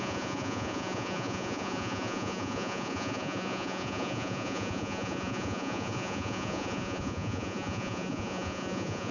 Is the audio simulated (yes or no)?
yes